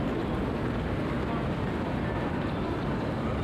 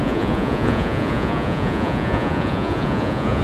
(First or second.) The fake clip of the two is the second